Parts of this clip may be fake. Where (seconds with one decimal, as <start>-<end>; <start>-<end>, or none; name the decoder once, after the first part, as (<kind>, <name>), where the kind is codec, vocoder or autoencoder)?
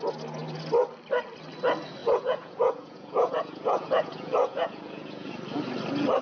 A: 2.0-5.3 (vocoder, Vocos)